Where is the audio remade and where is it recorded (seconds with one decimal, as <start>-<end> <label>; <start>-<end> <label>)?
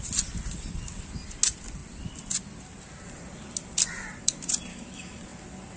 0.0-4.7 recorded; 4.7-5.2 remade; 5.2-5.8 recorded